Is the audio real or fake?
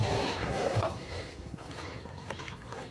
fake